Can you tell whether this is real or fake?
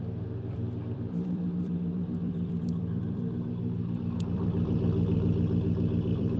fake